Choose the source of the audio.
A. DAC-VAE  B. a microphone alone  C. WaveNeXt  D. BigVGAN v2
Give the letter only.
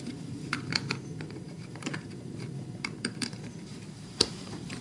D